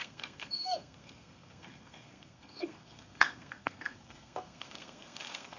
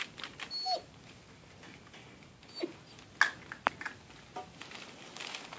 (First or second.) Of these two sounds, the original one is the second